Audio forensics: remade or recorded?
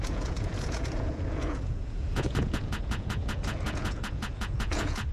remade